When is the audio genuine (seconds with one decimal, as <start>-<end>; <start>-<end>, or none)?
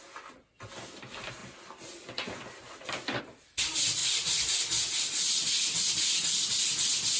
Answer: 0.0-7.2